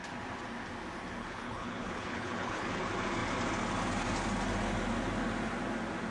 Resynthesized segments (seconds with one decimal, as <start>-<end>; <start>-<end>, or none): 1.2-2.8